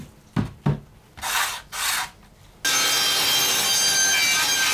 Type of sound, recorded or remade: recorded